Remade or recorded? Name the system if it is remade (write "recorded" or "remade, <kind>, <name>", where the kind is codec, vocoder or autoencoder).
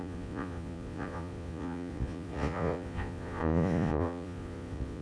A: remade, vocoder, Vocos